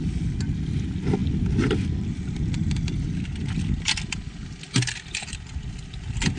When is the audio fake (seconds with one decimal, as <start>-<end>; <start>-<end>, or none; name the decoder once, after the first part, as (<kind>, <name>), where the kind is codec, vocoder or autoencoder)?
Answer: none